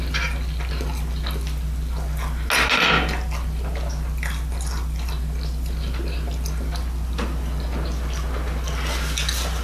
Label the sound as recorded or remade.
recorded